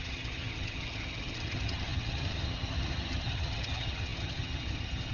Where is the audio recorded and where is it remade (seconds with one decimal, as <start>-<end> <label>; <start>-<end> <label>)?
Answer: 0.0-5.1 remade